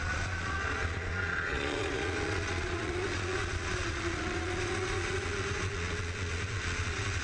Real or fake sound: fake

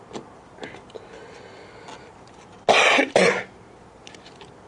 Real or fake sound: real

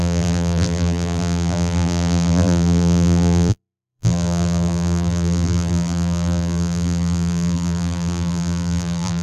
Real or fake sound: fake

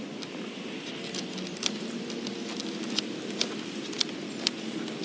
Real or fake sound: real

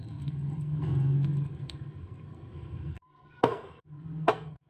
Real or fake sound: fake